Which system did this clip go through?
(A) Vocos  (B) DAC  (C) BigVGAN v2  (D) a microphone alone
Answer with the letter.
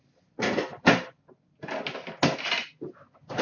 D